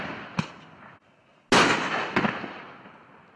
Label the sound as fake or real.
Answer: real